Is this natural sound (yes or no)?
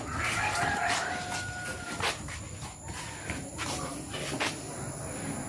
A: yes